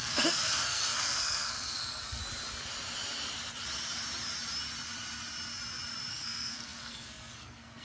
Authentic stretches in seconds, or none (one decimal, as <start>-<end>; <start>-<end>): 2.2-6.1